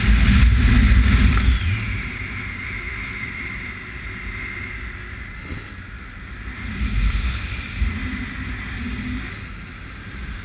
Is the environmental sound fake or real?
real